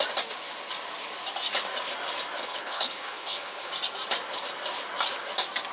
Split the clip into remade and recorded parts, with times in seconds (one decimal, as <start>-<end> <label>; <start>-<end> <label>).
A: 0.0-2.4 recorded; 2.4-3.7 remade; 3.7-5.7 recorded